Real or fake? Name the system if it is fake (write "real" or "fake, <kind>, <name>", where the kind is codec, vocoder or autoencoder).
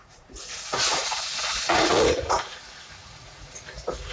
fake, vocoder, Vocos